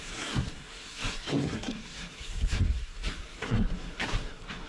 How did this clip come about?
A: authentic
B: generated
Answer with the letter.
B